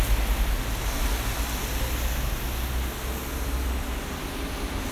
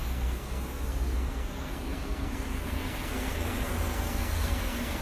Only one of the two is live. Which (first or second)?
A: first